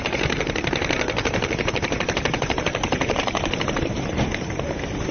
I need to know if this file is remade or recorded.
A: remade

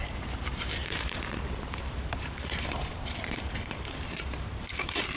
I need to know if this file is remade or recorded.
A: remade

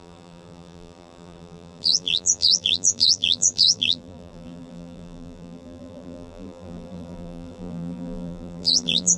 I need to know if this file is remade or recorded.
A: remade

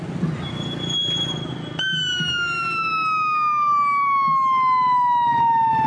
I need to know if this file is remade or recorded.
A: recorded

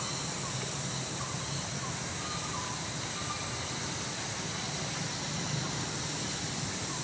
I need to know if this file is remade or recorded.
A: recorded